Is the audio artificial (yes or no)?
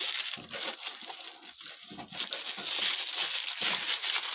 no